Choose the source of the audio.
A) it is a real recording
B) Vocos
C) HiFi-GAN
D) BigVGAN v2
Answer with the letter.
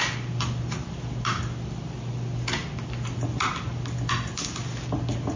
A